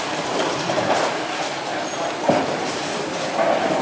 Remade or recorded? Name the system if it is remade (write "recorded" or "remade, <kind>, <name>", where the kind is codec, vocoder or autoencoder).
remade, vocoder, BigVGAN v2